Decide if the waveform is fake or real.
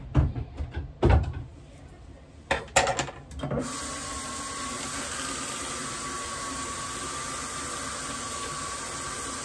real